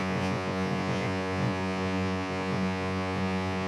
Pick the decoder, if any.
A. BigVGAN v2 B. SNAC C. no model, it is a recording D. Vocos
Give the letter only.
D